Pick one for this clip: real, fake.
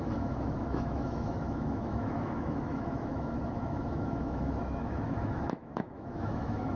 fake